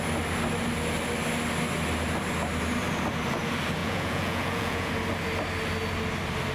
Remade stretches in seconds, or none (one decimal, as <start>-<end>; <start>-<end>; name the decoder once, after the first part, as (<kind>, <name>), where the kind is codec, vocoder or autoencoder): 3.8-4.9 (vocoder, Vocos)

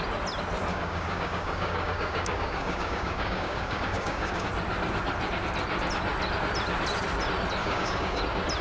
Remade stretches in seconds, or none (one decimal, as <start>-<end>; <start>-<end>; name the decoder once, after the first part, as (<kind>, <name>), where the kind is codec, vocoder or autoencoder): 0.7-4.5 (codec, DAC); 7.6-8.2

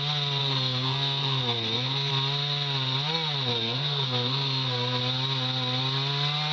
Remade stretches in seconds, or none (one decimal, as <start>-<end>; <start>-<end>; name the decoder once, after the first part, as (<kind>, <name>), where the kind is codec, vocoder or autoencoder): 0.4-2.1 (codec, SNAC); 3.5-5.0

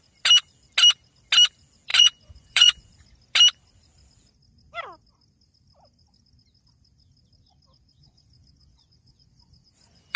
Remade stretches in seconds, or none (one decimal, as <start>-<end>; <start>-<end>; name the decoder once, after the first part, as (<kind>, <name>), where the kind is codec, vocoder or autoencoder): 1.9-2.9 (vocoder, Vocos); 8.0-10.2